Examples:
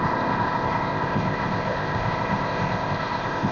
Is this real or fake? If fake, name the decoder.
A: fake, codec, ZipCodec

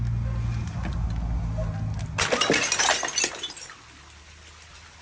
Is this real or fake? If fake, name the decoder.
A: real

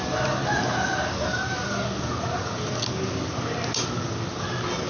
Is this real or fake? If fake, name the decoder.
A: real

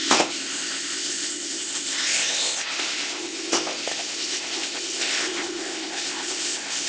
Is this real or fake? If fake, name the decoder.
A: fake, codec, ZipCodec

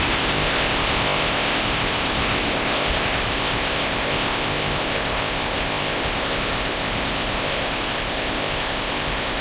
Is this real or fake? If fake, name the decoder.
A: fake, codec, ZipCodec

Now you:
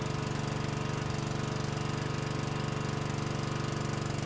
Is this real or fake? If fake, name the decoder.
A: real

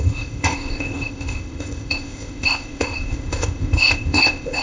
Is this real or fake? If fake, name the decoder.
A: fake, codec, ZipCodec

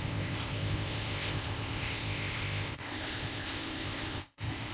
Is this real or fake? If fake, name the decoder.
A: fake, codec, ZipCodec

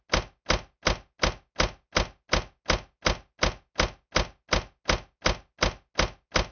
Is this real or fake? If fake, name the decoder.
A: real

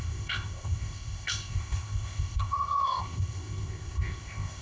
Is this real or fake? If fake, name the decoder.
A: fake, codec, ZipCodec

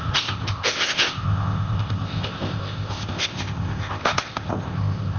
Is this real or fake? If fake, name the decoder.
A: fake, codec, ZipCodec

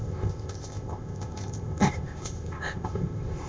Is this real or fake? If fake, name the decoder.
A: fake, codec, ZipCodec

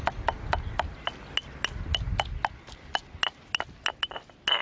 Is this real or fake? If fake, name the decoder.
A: real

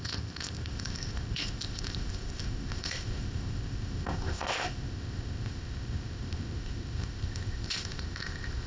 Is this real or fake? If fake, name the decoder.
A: fake, codec, ZipCodec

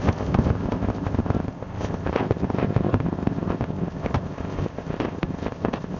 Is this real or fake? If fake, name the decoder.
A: fake, codec, ZipCodec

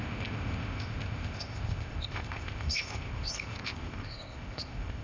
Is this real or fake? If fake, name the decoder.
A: fake, codec, ZipCodec